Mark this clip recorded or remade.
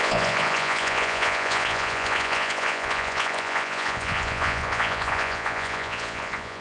remade